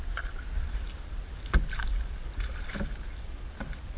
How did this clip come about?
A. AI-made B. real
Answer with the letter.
B